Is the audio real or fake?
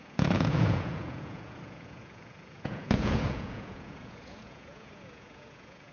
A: fake